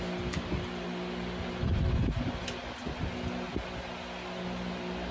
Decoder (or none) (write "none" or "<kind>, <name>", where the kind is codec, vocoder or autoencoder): none